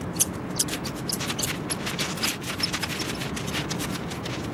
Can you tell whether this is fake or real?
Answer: real